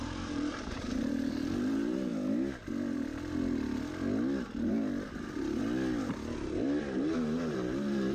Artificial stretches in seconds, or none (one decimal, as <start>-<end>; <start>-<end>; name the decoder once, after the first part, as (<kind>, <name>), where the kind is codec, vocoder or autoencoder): 0.0-2.1 (vocoder, BigVGAN v2); 6.8-8.1